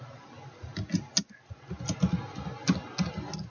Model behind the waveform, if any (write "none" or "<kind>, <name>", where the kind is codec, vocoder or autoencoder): none